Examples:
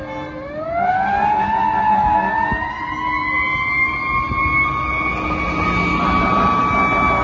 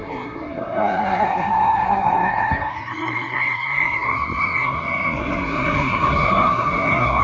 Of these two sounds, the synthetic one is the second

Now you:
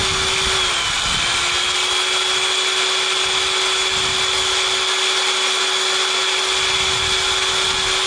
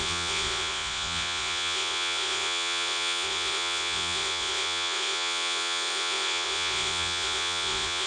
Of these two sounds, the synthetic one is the second